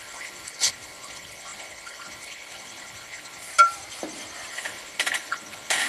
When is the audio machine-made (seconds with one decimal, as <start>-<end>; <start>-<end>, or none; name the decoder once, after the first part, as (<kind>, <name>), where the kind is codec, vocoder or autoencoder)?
0.0-3.5 (codec, HILCodec); 4.5-5.9

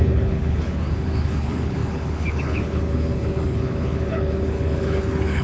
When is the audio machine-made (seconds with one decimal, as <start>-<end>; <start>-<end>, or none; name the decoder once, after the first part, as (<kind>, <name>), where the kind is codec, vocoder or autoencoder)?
0.0-5.4 (codec, HILCodec)

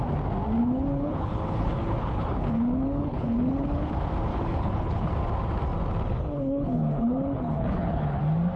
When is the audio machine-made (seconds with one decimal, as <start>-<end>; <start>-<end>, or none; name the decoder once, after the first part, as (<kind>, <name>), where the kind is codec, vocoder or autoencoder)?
0.6-3.9 (codec, HILCodec); 4.3-5.1; 6.1-8.2

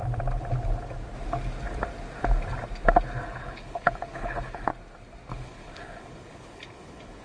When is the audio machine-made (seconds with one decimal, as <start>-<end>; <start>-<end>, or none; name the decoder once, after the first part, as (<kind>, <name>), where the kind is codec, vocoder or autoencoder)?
3.4-4.7 (codec, HILCodec); 5.3-7.2

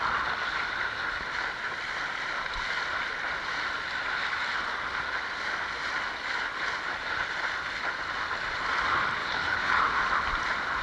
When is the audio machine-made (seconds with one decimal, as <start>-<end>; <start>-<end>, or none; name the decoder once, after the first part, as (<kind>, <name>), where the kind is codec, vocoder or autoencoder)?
9.2-9.8 (codec, HILCodec)

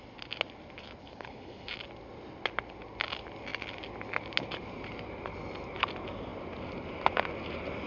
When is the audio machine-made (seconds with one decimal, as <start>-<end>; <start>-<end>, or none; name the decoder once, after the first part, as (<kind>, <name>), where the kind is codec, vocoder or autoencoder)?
1.0-1.7 (codec, HILCodec)

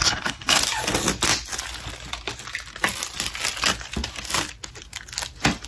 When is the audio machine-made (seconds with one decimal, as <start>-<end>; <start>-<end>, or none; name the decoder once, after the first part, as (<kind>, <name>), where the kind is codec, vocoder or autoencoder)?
0.0-0.6 (codec, HILCodec)

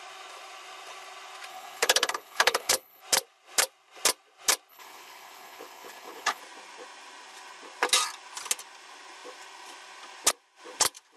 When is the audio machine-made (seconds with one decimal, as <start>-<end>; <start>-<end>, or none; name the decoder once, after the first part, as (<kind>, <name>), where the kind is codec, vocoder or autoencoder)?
1.5-3.0 (codec, HILCodec); 4.7-6.4